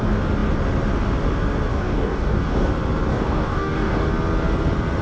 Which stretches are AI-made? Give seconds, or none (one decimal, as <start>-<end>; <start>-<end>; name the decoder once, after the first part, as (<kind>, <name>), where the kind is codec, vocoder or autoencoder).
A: 1.7-2.7 (codec, DAC); 3.1-4.1